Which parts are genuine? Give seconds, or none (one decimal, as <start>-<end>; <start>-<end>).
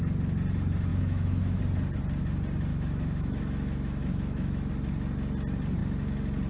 0.0-0.9; 1.6-2.7; 4.7-6.5